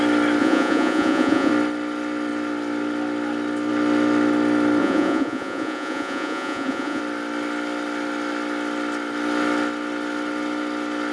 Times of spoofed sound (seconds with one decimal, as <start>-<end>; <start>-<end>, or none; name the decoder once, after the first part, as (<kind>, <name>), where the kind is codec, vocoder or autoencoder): 0.4-1.5 (vocoder, Vocos); 4.8-7.0